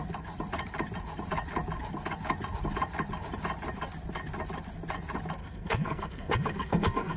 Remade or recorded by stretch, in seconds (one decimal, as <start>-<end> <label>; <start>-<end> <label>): 0.0-5.4 recorded; 5.4-7.2 remade